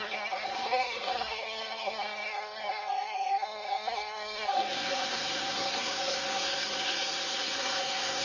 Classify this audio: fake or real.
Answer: fake